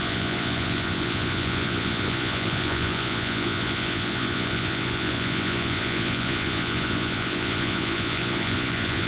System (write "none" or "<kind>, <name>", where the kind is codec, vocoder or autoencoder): vocoder, Vocos